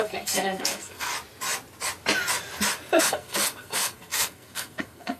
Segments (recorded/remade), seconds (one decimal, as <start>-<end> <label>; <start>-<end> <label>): 0.0-1.1 remade; 1.1-3.0 recorded; 3.0-5.2 remade